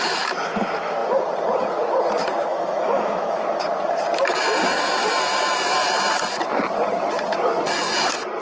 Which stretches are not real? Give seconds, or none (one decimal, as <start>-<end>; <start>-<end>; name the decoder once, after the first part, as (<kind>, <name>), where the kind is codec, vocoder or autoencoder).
2.5-3.4 (autoencoder, DAC-VAE)